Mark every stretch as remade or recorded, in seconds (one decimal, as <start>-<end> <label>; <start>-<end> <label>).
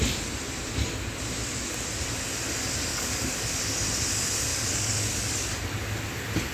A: 0.0-2.9 recorded; 2.9-3.6 remade; 3.6-4.5 recorded; 4.5-5.6 remade; 5.6-6.5 recorded